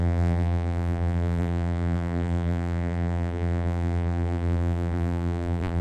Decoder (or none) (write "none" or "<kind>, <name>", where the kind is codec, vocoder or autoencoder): vocoder, BigVGAN v2